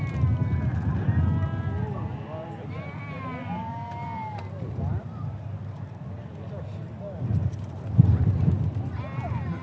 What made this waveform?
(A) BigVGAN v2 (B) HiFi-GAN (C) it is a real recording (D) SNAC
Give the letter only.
C